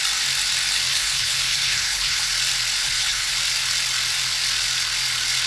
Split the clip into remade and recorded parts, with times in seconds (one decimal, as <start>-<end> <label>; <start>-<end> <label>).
0.0-0.9 recorded; 0.9-2.3 remade; 2.3-2.8 recorded; 2.8-3.3 remade; 3.3-5.5 recorded